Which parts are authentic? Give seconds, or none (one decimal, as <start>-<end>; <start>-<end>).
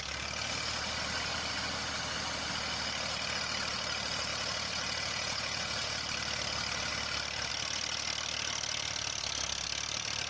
0.0-4.3; 6.0-10.3